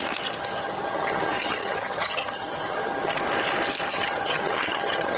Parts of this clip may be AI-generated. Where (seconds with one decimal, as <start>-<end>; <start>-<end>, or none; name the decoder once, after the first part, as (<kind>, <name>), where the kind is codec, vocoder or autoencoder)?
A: 0.6-3.2 (vocoder, HiFi-GAN); 3.9-5.2